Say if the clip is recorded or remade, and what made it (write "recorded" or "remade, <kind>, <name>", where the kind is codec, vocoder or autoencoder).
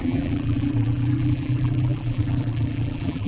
remade, vocoder, BigVGAN v2